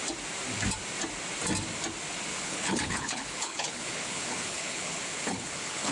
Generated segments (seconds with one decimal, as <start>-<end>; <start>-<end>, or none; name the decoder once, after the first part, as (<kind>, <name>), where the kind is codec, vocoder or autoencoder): 2.3-5.9 (codec, HILCodec)